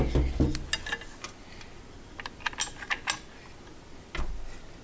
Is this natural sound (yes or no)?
yes